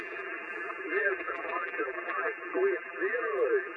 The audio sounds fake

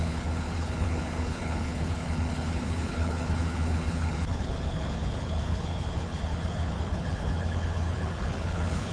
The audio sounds fake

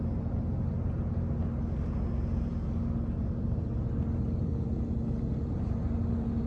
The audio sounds real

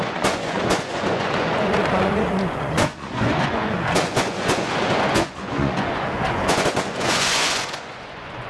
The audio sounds fake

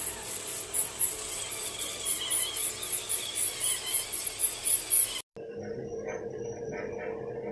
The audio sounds real